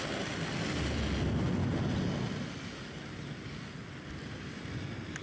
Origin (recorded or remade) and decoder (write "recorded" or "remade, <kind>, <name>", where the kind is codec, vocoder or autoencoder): recorded